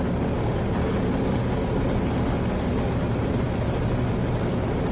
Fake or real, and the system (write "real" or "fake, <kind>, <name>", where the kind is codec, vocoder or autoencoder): real